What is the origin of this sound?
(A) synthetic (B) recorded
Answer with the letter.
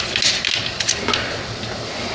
B